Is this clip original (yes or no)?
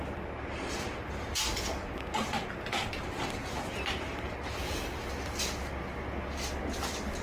yes